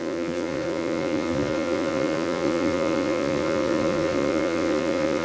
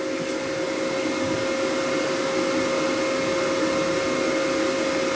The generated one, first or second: first